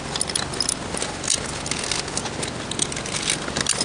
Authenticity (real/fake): real